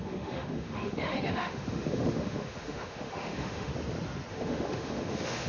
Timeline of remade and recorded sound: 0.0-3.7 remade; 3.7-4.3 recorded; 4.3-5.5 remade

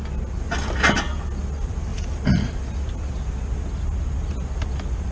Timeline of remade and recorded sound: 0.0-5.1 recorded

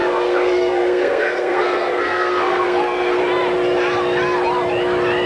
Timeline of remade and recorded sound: 0.0-3.2 remade; 3.2-5.3 recorded

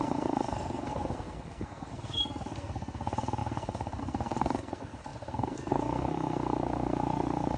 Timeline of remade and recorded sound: 0.0-7.6 remade